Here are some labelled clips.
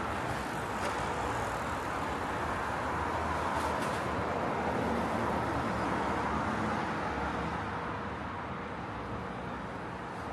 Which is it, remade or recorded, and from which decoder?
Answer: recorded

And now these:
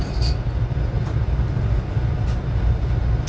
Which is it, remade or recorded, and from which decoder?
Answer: recorded